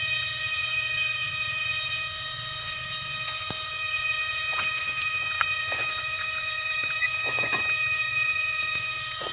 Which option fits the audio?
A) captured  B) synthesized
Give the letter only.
B